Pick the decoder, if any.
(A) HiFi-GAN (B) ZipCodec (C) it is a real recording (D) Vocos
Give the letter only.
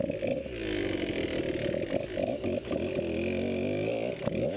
C